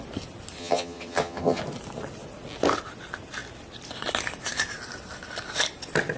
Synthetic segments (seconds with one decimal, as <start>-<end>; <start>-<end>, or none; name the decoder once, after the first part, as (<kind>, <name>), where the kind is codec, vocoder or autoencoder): 0.6-1.6 (vocoder, HiFi-GAN)